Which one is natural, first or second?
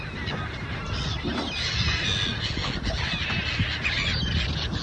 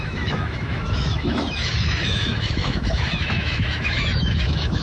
first